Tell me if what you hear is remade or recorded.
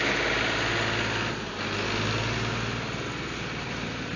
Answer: recorded